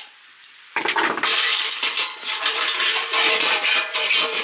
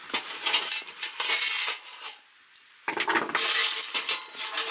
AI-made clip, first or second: first